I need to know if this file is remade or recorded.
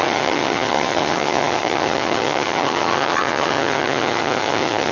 remade